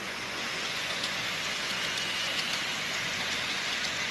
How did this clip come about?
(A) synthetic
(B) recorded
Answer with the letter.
A